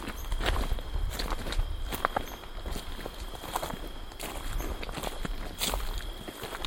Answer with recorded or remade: recorded